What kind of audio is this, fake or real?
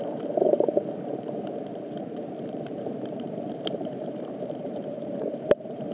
fake